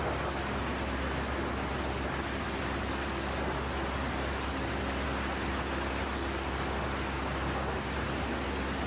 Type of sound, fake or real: real